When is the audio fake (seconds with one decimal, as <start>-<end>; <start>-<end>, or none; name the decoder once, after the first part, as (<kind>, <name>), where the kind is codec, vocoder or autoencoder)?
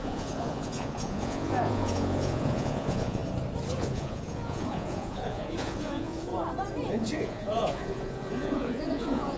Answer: 0.0-3.2 (vocoder, Vocos); 3.8-6.3; 6.9-9.4